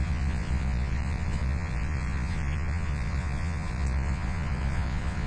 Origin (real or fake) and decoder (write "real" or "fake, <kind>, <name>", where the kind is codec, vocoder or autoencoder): fake, vocoder, Vocos